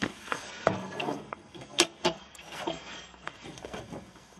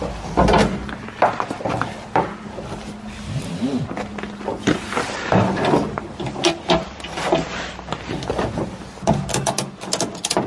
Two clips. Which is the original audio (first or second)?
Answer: second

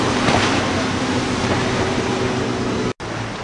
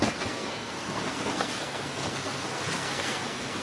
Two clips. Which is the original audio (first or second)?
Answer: first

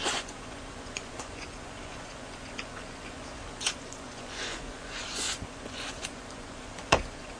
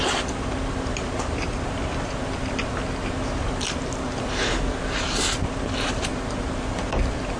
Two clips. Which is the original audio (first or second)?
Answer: second